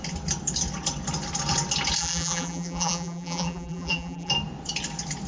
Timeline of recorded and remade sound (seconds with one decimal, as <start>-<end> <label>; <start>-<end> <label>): 0.0-2.0 recorded; 2.0-4.3 remade; 4.3-5.3 recorded